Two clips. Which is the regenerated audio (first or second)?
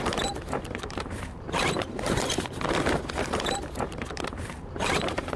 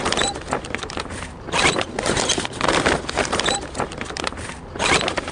first